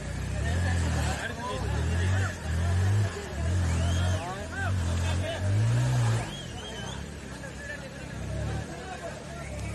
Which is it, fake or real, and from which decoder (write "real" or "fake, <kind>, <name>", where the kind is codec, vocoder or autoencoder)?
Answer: real